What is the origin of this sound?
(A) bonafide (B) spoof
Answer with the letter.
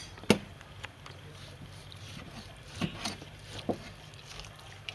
A